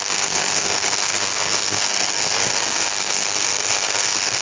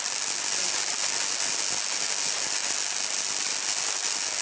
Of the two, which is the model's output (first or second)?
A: first